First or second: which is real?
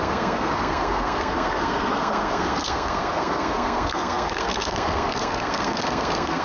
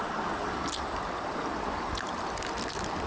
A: second